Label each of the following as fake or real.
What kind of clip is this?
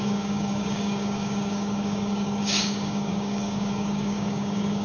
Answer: fake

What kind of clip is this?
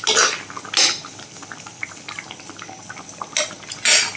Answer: real